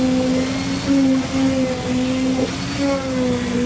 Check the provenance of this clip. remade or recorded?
recorded